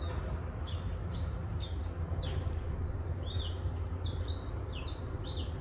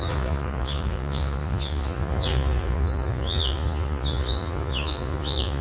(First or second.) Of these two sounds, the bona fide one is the first